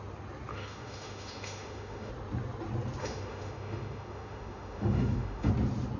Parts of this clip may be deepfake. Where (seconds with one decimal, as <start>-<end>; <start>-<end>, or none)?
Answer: 0.5-2.1; 3.0-5.5